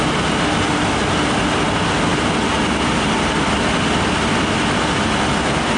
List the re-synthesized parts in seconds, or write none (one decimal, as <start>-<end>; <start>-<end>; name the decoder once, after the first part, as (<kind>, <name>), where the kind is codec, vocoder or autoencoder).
none